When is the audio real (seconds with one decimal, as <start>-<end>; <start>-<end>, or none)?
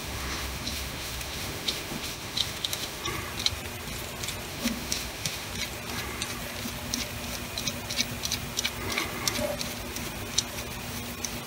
3.0-4.5; 5.5-11.5